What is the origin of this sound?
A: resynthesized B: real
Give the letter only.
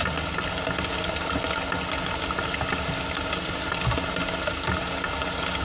B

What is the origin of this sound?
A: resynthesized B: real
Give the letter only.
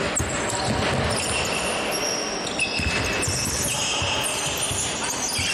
B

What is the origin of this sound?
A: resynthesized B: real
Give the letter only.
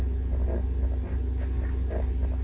B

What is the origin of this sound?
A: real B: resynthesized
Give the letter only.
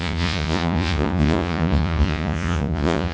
B